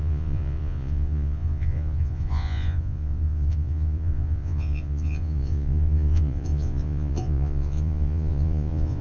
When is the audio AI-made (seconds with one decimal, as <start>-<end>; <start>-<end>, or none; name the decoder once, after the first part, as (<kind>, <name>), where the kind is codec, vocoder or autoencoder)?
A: 0.0-9.0 (vocoder, Vocos)